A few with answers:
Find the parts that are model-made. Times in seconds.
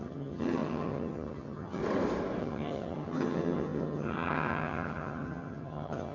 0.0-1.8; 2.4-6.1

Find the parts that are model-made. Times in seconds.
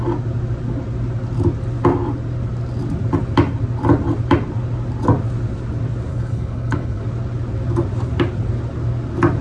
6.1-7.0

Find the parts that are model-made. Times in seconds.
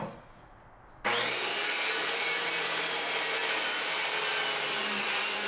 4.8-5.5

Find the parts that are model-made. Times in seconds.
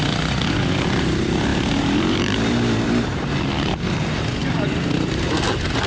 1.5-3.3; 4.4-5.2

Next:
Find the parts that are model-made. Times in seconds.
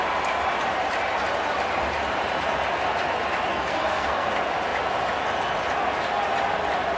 3.5-4.3